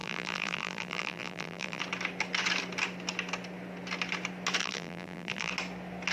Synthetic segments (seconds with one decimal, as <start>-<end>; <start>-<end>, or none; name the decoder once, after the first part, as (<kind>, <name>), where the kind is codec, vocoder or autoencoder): 0.0-1.8 (vocoder, BigVGAN v2); 4.6-5.5